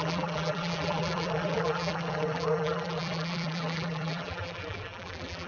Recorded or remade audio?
remade